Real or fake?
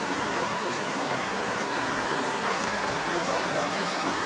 fake